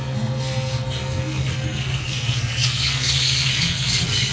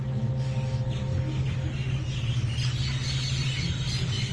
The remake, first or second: first